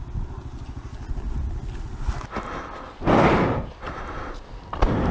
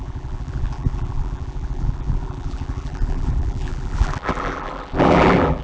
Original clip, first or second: first